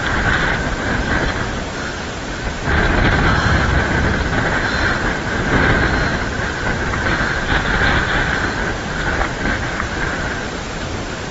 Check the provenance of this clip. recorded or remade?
recorded